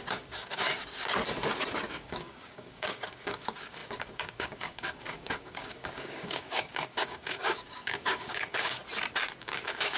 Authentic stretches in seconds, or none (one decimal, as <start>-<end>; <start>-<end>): 0.8-1.9; 8.8-9.4